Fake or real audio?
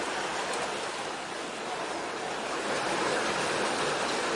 real